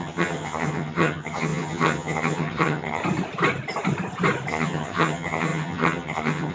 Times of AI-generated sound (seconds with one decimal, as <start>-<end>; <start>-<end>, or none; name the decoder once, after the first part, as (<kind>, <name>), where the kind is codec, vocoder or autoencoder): 0.0-3.0 (vocoder, HiFi-GAN); 4.5-6.5